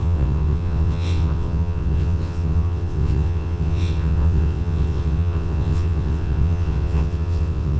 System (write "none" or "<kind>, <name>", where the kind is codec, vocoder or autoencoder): vocoder, WaveNeXt